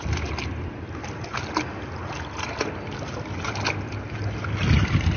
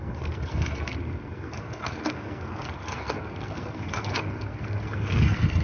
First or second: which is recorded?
first